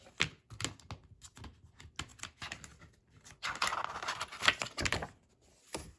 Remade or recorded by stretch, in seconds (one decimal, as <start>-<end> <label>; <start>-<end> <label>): 0.0-6.0 recorded